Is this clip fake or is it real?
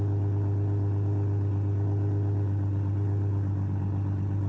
real